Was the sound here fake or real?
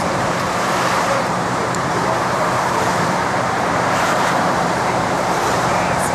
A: fake